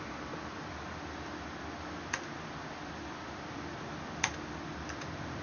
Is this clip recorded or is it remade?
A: recorded